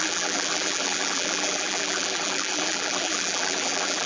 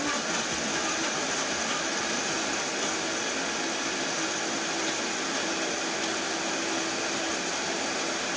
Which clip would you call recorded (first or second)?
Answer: second